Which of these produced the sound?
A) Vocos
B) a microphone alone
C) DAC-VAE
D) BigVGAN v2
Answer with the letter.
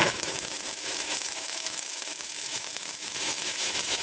C